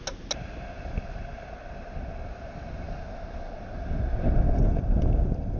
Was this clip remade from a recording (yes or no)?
no